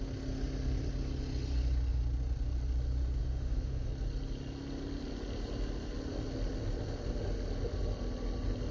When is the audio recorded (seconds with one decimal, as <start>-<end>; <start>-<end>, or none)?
0.0-3.2; 3.9-8.7